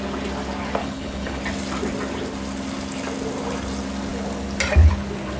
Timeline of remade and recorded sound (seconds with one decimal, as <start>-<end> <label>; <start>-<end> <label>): 0.0-0.8 recorded; 0.8-1.4 remade; 1.4-5.4 recorded